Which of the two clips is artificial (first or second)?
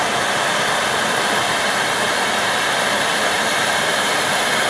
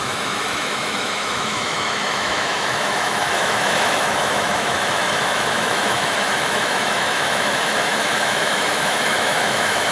second